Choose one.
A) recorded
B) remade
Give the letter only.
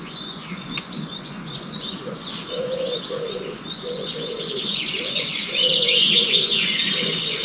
B